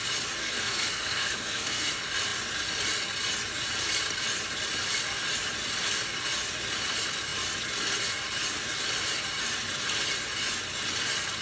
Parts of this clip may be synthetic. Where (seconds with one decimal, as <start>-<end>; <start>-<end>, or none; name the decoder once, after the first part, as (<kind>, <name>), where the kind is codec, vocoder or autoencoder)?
0.4-1.9 (codec, SNAC)